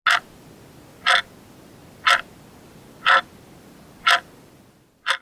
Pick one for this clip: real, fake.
real